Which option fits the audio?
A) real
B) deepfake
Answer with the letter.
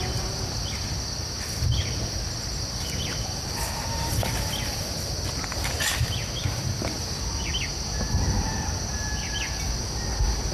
A